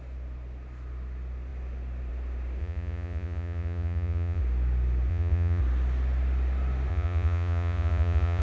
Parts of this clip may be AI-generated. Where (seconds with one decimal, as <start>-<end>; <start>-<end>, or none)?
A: 2.6-4.4; 5.1-5.6; 6.9-8.4